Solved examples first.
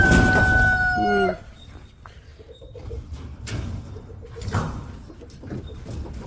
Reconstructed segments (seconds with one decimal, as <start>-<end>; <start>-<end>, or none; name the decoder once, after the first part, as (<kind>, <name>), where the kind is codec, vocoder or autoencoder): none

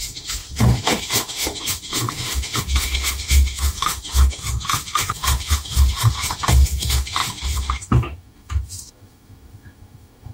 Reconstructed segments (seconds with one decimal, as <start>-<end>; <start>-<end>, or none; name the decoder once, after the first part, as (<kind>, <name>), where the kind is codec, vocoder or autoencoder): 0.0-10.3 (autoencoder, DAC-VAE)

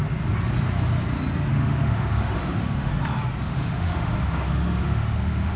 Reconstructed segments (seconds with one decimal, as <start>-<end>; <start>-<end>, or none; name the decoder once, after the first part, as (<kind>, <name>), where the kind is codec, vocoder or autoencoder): 1.5-2.9 (autoencoder, DAC-VAE); 3.4-5.6

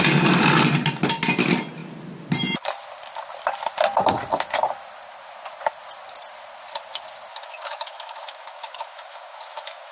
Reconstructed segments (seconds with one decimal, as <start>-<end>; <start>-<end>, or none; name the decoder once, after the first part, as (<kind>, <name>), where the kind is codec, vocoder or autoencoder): 7.3-9.9 (autoencoder, DAC-VAE)